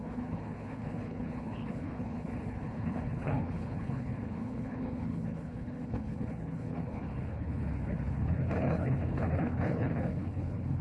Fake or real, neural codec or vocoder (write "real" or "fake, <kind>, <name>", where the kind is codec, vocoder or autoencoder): fake, codec, HILCodec